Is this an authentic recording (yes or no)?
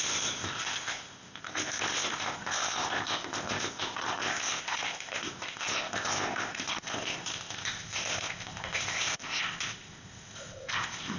no